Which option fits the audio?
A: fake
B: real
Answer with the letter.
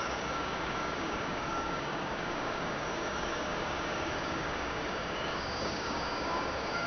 A